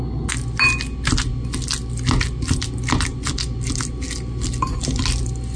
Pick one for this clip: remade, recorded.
recorded